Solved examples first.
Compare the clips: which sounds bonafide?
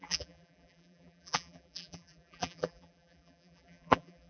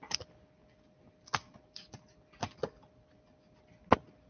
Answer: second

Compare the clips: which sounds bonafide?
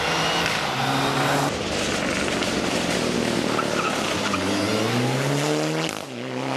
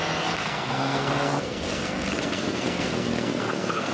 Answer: first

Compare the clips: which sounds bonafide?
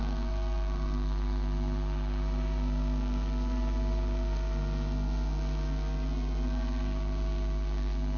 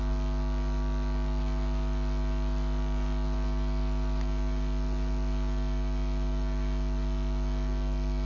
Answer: second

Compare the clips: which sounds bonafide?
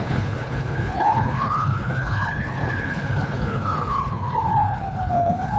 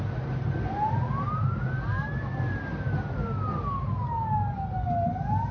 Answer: second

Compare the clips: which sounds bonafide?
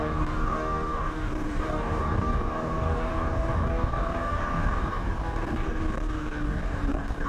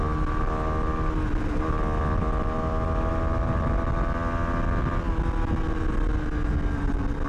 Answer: second